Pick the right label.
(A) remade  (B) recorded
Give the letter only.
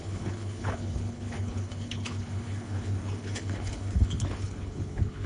A